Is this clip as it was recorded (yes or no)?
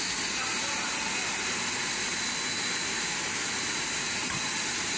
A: yes